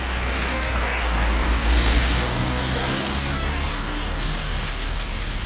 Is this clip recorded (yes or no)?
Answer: no